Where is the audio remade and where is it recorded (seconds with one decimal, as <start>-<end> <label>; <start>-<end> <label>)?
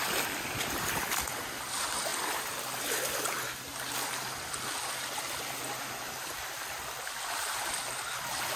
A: 0.0-8.6 recorded